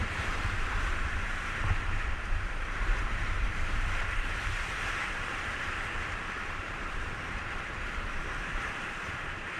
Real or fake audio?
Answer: fake